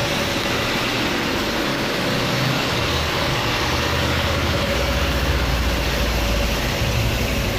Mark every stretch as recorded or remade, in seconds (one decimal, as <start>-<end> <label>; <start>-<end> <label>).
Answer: 0.0-1.7 recorded; 1.7-5.5 remade; 5.5-7.6 recorded